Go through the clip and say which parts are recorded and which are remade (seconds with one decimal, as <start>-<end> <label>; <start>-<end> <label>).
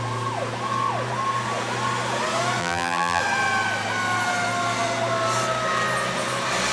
0.0-2.6 recorded; 2.6-3.2 remade; 3.2-6.7 recorded